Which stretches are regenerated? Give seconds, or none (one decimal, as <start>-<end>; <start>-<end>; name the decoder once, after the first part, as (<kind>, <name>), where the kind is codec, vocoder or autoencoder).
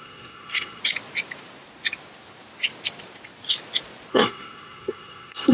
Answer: 0.0-0.8 (codec, SNAC); 4.1-5.5